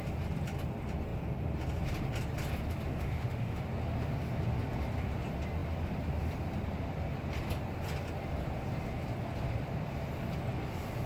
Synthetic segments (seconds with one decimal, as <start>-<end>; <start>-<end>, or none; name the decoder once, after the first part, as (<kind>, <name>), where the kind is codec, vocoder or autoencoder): 2.9-3.6 (autoencoder, DAC-VAE)